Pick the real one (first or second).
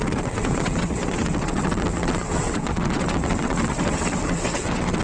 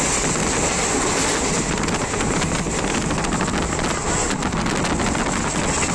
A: second